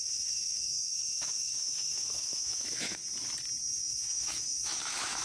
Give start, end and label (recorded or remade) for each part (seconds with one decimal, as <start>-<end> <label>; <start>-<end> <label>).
0.0-3.0 remade; 3.0-3.7 recorded; 3.7-5.2 remade